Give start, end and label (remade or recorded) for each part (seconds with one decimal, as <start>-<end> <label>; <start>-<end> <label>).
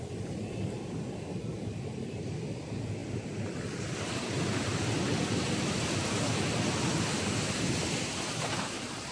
0.0-9.1 recorded